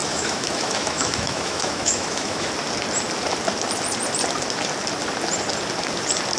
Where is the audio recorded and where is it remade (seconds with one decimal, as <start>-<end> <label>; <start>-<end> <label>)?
0.0-2.5 remade; 2.5-6.4 recorded